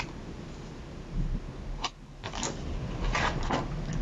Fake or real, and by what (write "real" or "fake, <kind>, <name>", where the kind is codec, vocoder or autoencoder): real